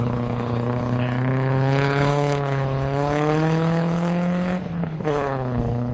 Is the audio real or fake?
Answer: fake